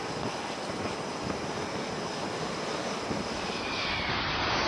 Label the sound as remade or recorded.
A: recorded